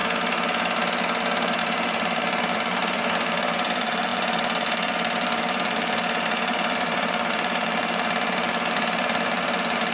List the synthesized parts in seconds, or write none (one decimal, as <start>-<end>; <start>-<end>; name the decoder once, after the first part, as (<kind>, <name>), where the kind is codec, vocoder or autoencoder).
1.6-9.9 (vocoder, BigVGAN v2)